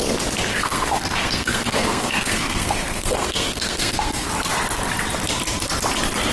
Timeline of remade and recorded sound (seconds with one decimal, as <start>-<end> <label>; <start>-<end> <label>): 0.0-0.5 recorded; 0.5-4.3 remade; 4.3-6.3 recorded